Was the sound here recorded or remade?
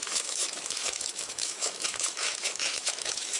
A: remade